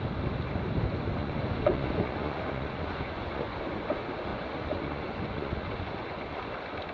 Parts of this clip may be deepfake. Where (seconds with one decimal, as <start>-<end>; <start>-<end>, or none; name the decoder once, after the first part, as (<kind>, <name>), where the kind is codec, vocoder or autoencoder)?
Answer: 1.2-3.6 (vocoder, Vocos); 4.3-6.4

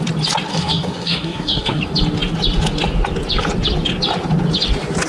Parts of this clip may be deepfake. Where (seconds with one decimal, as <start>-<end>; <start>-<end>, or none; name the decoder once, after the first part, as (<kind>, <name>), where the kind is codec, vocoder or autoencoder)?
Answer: 0.5-1.8 (codec, SNAC)